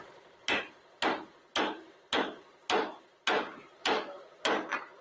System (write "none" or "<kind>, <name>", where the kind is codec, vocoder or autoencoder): none